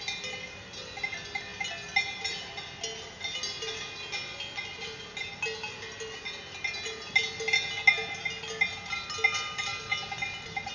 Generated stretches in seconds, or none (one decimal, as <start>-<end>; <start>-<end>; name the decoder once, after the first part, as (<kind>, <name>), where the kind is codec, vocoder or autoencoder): none